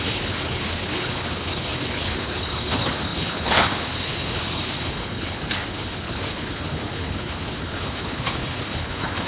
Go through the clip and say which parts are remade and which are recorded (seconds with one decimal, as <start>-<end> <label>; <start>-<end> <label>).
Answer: 0.0-9.3 remade